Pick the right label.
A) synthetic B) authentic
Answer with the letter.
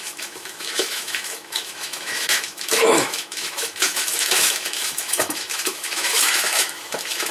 A